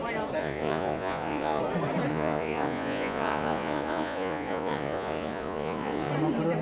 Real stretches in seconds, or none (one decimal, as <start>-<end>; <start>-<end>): 0.0-0.4; 1.6-2.1; 6.1-6.6